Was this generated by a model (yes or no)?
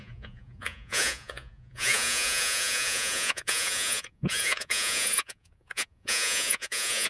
yes